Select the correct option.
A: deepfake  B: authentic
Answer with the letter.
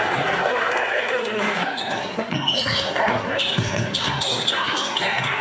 A